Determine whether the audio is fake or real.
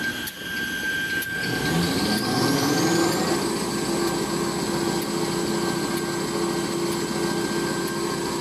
real